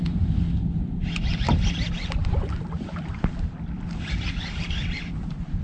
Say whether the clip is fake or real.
real